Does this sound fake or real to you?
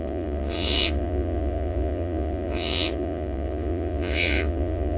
fake